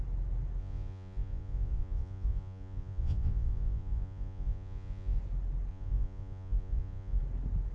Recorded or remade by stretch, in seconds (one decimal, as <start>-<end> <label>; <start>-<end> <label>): 0.0-0.6 recorded; 0.6-5.2 remade; 5.2-5.7 recorded; 5.7-7.2 remade; 7.2-7.7 recorded